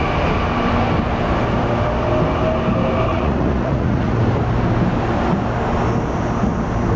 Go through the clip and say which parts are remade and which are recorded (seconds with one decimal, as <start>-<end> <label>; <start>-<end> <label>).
0.0-3.1 recorded; 3.1-4.2 remade; 4.2-7.0 recorded